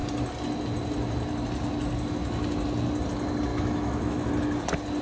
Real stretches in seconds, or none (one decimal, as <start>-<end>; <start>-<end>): 0.0-3.5; 4.3-5.0